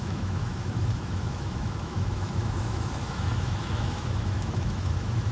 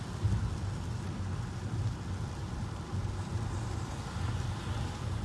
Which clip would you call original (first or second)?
second